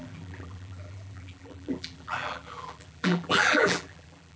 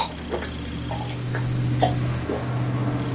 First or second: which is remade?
first